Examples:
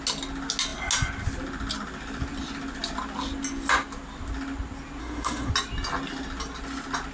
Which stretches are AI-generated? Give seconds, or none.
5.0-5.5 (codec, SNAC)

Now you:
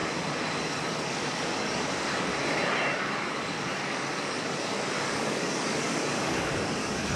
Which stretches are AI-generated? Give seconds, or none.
0.6-2.3 (codec, DAC); 3.0-7.2